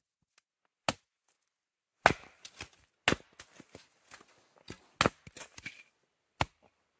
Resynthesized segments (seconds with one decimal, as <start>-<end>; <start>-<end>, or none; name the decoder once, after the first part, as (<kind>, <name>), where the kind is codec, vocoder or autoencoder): none